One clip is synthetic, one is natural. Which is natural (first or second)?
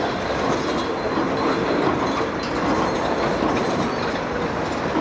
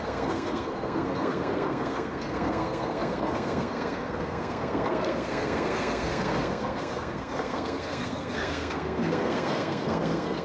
first